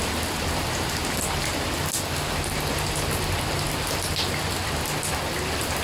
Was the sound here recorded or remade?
recorded